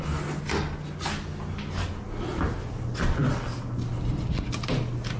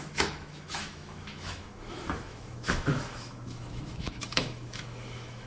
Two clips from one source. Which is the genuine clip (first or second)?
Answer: first